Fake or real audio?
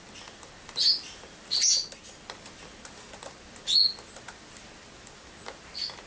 real